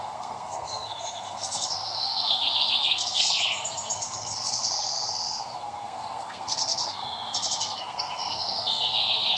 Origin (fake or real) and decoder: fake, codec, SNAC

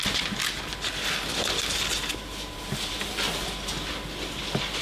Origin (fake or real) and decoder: real